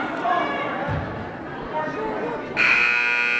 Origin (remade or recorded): recorded